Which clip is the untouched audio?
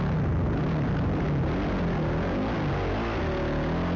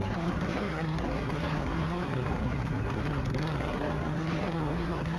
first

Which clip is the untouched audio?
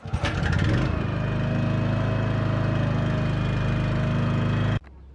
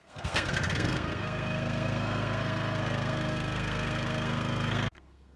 first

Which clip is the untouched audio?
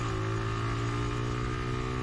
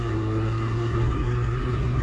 first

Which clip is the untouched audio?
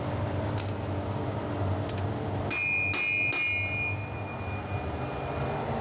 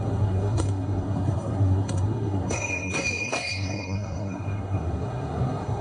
first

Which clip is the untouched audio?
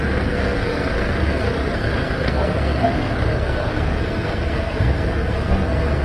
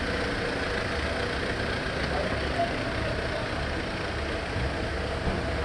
second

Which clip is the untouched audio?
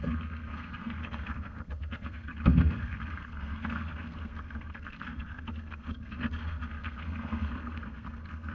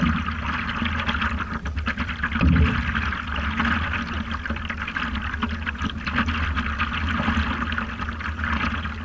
second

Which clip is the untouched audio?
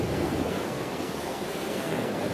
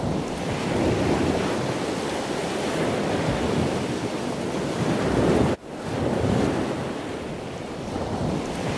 second